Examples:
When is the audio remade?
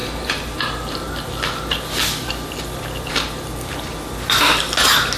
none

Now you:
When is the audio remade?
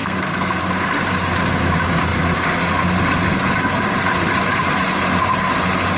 0.0-0.6 (codec, SNAC)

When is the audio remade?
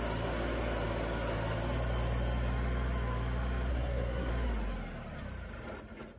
3.7-4.3 (codec, SNAC)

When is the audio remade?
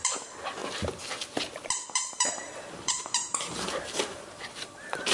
0.0-0.6 (vocoder, BigVGAN v2); 1.9-5.1